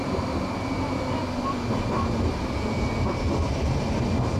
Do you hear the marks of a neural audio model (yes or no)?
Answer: no